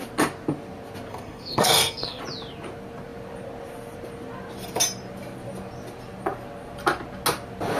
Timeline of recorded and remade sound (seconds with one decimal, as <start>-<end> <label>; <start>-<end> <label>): 0.0-1.1 recorded; 1.1-2.2 remade; 2.2-7.8 recorded